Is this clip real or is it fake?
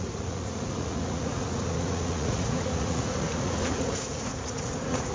fake